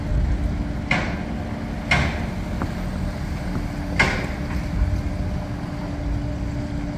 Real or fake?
real